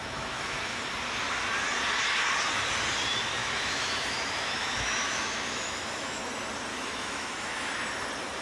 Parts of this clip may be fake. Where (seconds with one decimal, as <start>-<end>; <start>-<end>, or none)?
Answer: 0.0-0.8; 3.4-6.2; 6.7-7.7